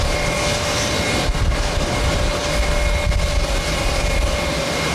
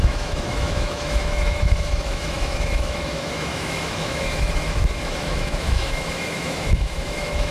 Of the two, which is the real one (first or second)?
first